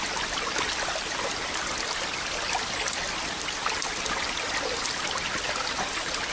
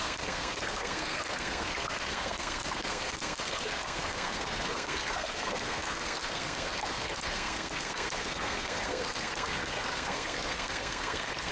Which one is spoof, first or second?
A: second